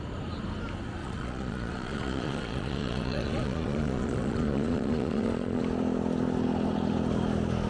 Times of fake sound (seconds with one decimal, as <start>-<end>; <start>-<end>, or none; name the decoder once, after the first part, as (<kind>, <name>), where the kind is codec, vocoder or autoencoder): 1.0-5.6 (vocoder, Vocos)